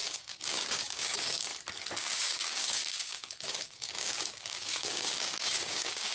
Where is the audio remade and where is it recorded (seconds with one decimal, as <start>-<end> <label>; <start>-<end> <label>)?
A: 0.0-1.5 remade; 1.5-2.0 recorded; 2.0-6.1 remade